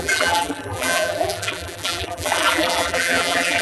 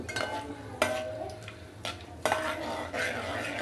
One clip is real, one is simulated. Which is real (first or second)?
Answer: second